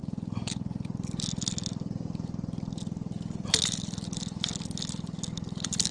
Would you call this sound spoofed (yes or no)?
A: no